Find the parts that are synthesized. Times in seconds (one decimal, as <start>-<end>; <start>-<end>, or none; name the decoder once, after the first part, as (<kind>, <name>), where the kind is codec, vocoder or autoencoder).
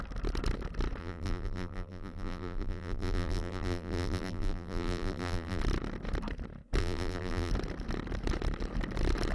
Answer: 1.0-5.6 (vocoder, BigVGAN v2); 6.8-7.5